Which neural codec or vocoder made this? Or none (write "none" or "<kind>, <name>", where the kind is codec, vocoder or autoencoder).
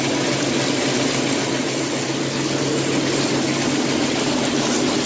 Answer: none